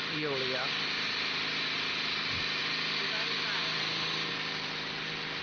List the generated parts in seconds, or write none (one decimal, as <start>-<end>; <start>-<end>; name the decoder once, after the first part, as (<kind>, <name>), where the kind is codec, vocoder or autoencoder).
none